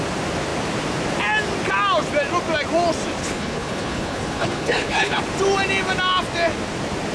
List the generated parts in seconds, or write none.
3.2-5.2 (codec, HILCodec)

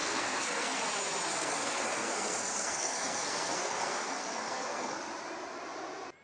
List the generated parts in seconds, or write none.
0.0-0.8 (codec, SNAC); 1.3-5.0

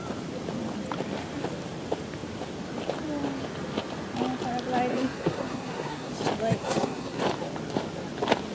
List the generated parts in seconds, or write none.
4.9-6.1 (codec, SNAC); 6.6-7.2

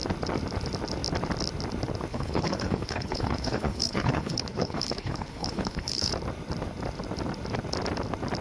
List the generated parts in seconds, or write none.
2.1-6.1 (codec, HILCodec)

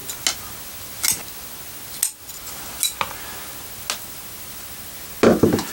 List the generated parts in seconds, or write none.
none